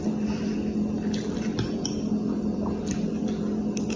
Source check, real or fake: real